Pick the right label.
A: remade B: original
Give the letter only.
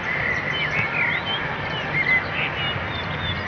B